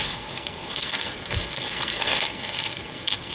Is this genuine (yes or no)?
no